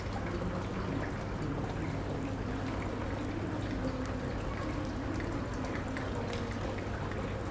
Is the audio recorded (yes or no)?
yes